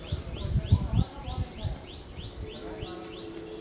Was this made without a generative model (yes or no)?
yes